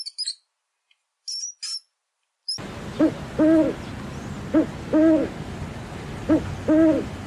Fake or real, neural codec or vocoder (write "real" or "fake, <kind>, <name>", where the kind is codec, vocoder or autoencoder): real